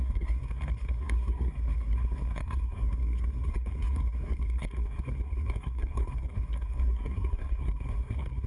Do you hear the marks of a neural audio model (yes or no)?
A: yes